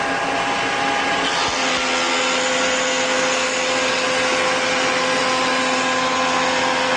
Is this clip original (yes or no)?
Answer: yes